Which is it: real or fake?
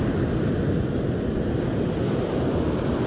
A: real